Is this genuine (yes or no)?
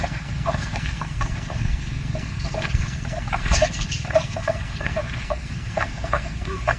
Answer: no